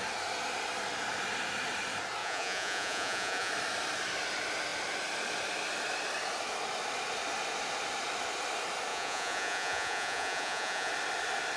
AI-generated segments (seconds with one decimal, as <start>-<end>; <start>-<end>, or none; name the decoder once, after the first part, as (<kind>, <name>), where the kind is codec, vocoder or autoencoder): 2.2-3.5 (vocoder, Vocos); 8.9-10.9

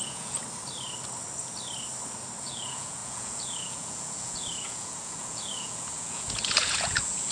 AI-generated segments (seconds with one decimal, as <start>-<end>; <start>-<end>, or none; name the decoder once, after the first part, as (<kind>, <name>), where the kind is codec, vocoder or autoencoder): 0.0-0.4 (vocoder, Vocos); 2.4-7.3

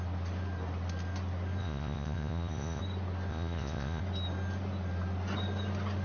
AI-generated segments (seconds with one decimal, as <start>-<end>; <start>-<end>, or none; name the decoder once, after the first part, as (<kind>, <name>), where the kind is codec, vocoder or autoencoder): 1.6-2.8 (vocoder, Vocos); 3.3-4.0

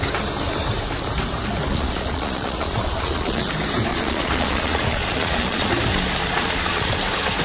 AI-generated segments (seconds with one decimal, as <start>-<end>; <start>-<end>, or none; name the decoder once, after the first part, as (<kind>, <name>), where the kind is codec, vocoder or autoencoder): 1.7-3.5 (vocoder, Vocos); 3.9-5.7; 6.2-6.9